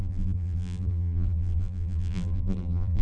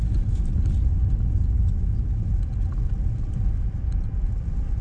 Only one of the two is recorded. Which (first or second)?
second